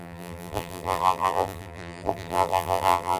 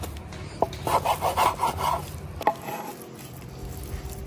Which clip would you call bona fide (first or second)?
second